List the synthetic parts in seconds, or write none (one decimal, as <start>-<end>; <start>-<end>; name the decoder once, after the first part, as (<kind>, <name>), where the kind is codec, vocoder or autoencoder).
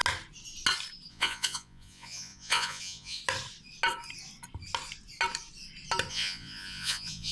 1.1-3.2 (vocoder, Vocos); 6.1-7.3